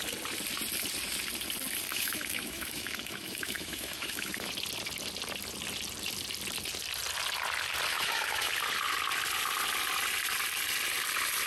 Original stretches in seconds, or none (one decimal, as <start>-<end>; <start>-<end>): 0.0-1.9; 4.5-7.9; 8.5-11.5